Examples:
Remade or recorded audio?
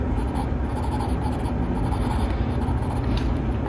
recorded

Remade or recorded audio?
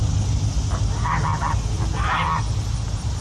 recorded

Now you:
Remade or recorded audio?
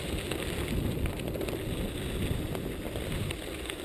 recorded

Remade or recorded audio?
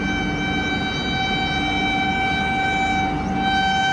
recorded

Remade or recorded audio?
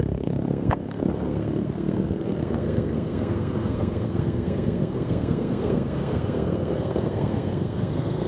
remade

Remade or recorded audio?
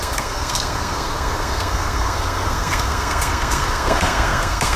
remade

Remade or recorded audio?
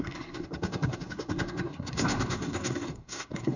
remade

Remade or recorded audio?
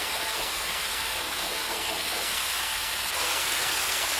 remade